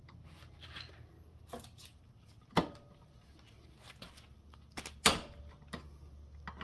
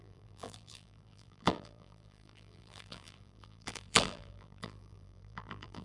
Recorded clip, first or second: first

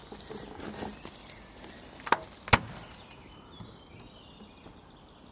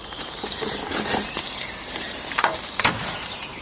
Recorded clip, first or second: first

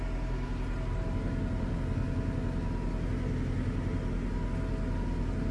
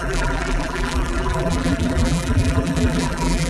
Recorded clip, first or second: first